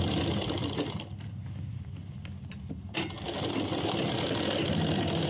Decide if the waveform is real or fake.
fake